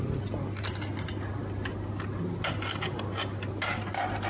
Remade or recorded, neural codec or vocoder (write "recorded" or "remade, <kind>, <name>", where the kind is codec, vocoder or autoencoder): recorded